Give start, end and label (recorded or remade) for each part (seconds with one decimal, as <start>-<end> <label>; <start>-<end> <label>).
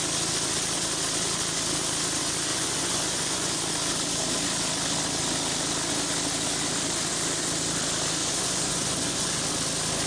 0.0-2.5 recorded; 2.5-3.6 remade; 3.6-8.2 recorded; 8.2-9.4 remade; 9.4-10.1 recorded